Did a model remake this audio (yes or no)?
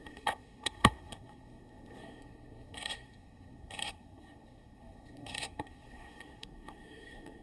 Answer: yes